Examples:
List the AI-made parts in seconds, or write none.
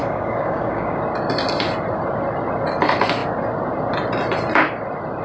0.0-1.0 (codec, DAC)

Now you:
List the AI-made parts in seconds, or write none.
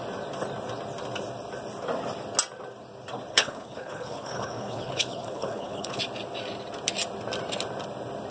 3.3-6.0 (codec, HILCodec)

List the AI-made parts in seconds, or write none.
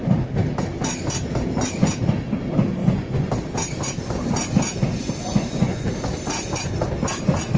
2.8-3.3 (vocoder, Vocos); 5.3-5.9